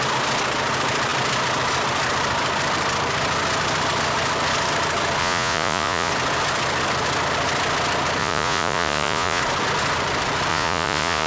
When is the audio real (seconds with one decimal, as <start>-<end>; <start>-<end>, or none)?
0.0-5.2; 6.1-8.2; 9.4-10.5